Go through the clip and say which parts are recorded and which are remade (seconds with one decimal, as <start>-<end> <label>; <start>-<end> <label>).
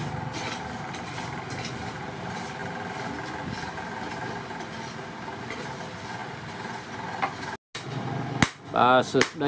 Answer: 0.0-9.5 recorded